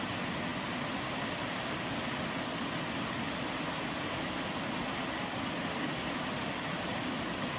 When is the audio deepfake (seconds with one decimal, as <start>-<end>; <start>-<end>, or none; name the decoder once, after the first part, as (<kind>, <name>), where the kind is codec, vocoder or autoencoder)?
none